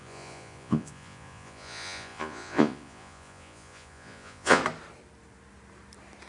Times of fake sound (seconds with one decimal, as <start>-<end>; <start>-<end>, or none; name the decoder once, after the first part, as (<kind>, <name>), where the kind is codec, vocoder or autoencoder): 0.0-4.6 (vocoder, Vocos)